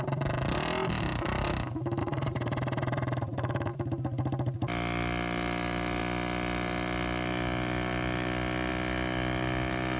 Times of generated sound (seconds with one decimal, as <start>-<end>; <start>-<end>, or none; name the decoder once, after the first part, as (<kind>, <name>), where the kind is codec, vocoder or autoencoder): 2.0-3.7 (vocoder, Vocos)